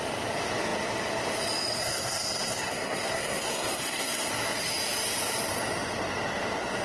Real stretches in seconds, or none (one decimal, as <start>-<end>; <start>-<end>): 0.0-1.8; 4.3-6.8